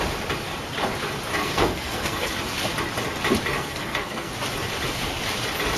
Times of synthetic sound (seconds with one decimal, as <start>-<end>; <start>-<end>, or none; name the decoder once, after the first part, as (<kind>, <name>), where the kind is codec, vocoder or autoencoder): 1.4-2.3 (codec, SNAC); 3.5-4.3